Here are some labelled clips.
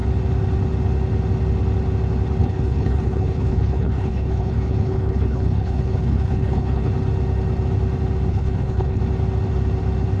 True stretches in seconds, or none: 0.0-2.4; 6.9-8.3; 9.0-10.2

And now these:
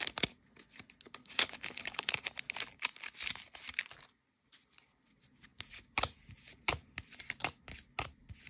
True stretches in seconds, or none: 0.0-1.2; 2.1-8.5

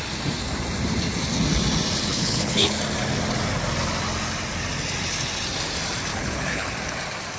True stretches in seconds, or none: 0.0-2.1; 2.8-6.1; 6.7-7.4